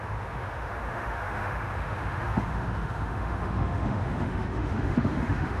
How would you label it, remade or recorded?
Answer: remade